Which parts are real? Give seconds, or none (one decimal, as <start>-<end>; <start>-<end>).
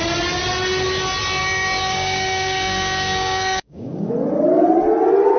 0.0-1.4; 4.1-5.4